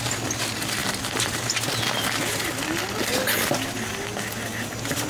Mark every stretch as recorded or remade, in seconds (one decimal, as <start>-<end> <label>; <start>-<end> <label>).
0.0-5.1 recorded